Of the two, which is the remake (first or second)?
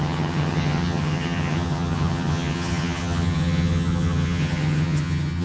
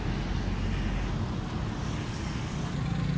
first